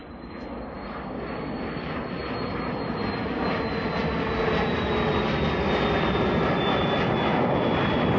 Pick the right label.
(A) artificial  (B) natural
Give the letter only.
B